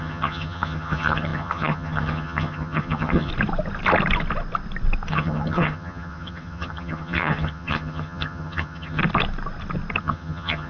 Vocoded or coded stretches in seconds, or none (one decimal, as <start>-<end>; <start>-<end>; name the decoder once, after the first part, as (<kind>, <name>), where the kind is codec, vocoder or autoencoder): 0.0-3.3 (vocoder, HiFi-GAN); 5.1-9.0; 10.0-10.7